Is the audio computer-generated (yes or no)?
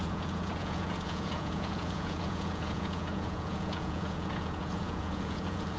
yes